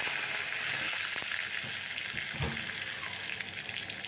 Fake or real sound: real